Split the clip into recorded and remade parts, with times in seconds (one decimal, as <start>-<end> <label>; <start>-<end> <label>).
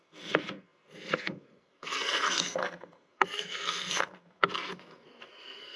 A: 0.0-5.8 remade